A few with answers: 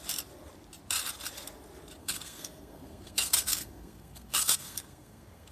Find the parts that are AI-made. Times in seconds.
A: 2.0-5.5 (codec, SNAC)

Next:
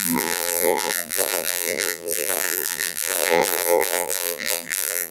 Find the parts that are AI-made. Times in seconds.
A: 0.0-5.1 (vocoder, BigVGAN v2)

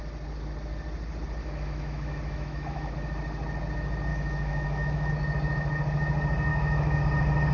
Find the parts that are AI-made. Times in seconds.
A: 1.4-2.9 (autoencoder, DAC-VAE); 4.1-5.1; 6.5-7.0

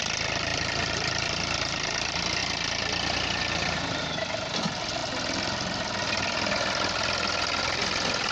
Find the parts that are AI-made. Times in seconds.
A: 0.0-2.4 (vocoder, BigVGAN v2); 3.4-5.0; 7.6-8.3

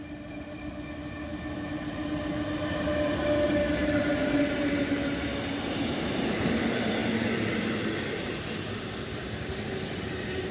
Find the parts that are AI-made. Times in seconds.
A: none